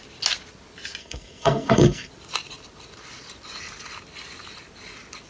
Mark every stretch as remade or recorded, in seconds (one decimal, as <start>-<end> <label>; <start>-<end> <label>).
0.0-1.0 recorded; 1.0-2.1 remade; 2.1-5.3 recorded